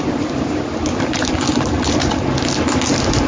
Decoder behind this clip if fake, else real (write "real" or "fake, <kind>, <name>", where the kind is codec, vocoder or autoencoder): real